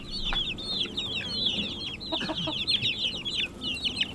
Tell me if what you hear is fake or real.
real